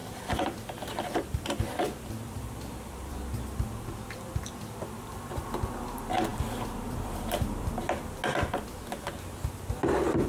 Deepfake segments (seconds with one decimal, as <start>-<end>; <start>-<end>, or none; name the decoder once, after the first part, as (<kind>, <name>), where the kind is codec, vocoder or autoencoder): 0.0-3.1 (vocoder, BigVGAN v2); 6.3-7.8